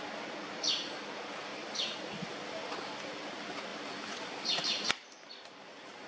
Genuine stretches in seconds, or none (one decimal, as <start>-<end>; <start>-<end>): 0.0-1.5; 2.1-3.7; 4.9-6.1